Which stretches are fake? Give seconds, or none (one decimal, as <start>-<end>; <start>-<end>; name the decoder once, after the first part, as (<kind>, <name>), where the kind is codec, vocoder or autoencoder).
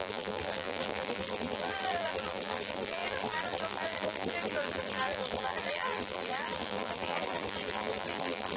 0.0-8.6 (vocoder, BigVGAN v2)